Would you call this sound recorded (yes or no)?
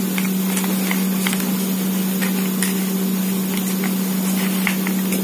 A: yes